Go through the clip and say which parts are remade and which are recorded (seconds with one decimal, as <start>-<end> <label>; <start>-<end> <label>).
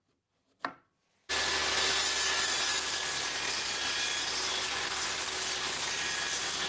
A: 0.0-4.5 recorded; 4.5-5.1 remade; 5.1-6.7 recorded